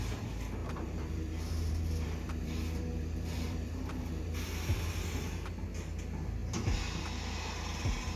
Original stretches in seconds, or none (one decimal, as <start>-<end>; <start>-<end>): 0.0-0.6; 4.8-8.2